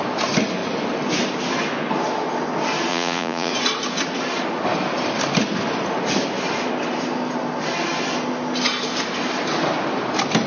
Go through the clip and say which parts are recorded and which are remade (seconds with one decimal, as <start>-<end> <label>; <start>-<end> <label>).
0.0-2.9 recorded; 2.9-3.5 remade; 3.5-10.5 recorded